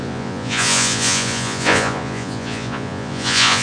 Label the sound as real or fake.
fake